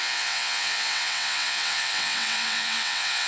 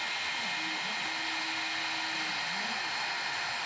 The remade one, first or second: first